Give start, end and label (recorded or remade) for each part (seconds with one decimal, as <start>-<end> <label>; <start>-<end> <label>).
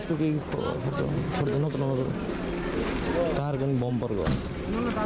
0.0-5.1 recorded